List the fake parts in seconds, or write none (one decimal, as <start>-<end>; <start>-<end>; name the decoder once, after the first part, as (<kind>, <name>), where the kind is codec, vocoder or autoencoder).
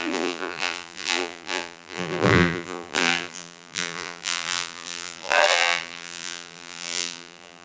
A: 0.0-7.6 (vocoder, BigVGAN v2)